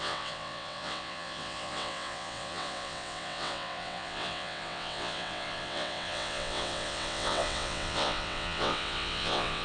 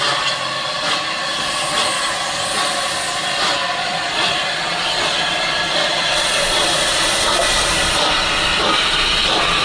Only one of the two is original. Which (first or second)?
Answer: second